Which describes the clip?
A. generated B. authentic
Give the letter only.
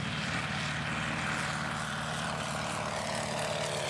B